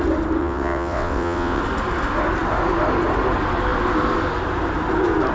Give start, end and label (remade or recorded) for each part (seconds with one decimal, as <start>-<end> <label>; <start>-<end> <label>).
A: 0.0-0.4 recorded; 0.4-1.6 remade; 1.6-5.3 recorded